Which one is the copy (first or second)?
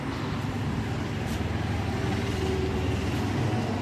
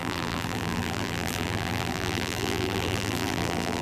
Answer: second